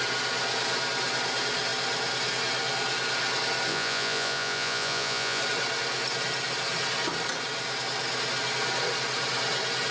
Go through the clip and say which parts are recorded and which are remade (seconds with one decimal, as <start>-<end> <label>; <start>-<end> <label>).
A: 0.0-3.7 recorded; 3.7-5.4 remade; 5.4-9.9 recorded